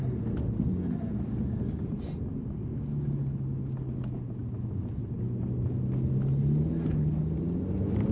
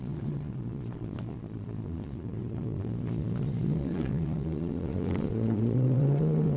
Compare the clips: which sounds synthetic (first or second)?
second